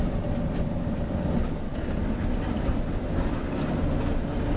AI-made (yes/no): no